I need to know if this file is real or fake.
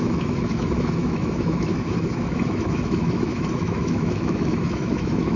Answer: fake